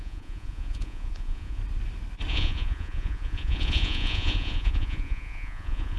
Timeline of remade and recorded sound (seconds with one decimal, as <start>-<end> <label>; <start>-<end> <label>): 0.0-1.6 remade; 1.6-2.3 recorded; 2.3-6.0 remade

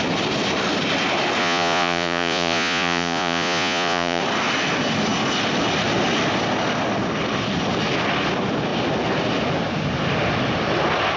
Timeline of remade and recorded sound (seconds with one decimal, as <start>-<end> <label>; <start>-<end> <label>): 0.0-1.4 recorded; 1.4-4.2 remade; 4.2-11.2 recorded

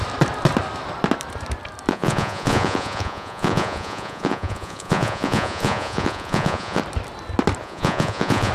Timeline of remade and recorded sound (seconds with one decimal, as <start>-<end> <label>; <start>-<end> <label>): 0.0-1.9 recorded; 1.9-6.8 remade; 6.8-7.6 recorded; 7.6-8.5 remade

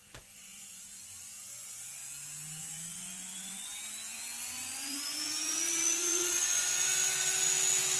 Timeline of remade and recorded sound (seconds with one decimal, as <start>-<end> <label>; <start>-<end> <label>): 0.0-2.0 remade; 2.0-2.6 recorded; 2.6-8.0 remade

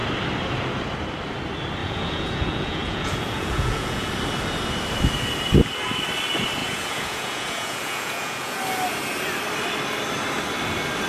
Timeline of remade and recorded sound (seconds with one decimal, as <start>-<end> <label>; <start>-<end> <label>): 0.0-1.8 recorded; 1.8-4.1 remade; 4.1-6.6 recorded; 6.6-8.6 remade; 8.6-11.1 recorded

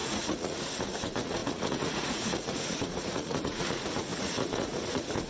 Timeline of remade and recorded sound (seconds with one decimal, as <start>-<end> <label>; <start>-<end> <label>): 0.0-5.3 remade

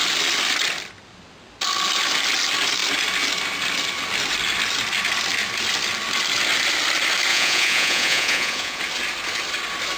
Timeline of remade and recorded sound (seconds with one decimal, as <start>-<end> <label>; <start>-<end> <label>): 0.0-7.3 recorded; 7.3-8.8 remade; 8.8-10.0 recorded

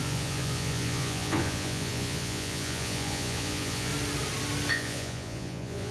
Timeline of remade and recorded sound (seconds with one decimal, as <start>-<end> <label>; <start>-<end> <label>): 0.0-3.9 remade; 3.9-4.7 recorded; 4.7-5.9 remade